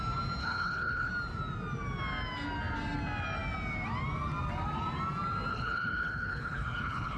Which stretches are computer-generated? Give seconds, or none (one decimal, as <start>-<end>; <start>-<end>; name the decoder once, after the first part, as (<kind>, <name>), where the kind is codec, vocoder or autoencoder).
0.4-1.1 (codec, HILCodec); 5.5-7.2